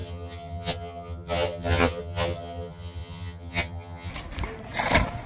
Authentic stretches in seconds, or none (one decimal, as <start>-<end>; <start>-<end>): 4.1-5.3